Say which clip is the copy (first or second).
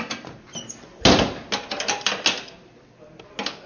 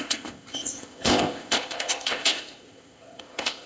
second